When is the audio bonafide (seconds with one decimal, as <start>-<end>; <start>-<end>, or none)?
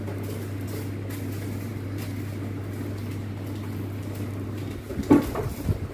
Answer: 0.0-5.9